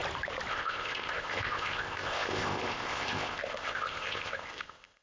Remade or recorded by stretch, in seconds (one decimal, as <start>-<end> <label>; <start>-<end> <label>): 0.0-0.5 recorded; 0.5-5.0 remade